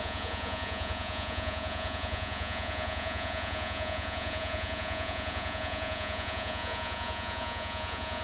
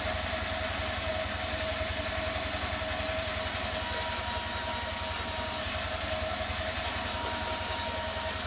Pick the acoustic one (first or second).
second